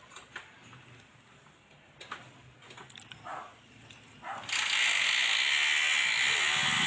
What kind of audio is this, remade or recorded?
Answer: recorded